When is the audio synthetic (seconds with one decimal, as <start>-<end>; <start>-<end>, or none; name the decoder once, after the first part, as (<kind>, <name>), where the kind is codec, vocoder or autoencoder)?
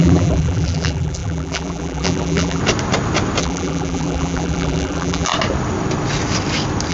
0.0-2.6 (vocoder, BigVGAN v2); 3.4-5.3